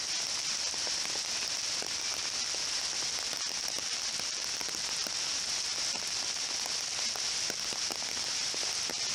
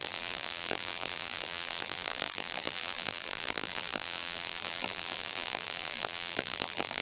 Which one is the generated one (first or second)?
second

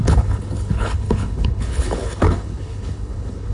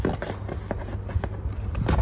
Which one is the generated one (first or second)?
first